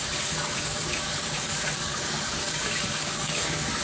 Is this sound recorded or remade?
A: remade